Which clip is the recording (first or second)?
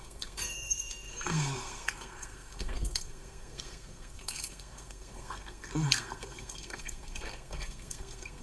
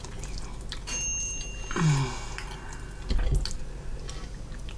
second